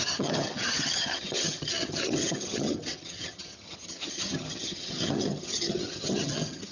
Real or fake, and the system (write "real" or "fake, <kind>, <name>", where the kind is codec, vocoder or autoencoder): fake, vocoder, HiFi-GAN